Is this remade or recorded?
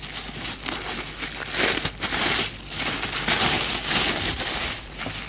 recorded